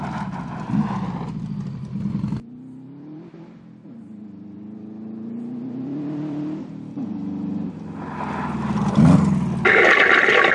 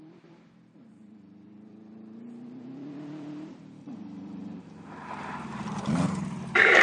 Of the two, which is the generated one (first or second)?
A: second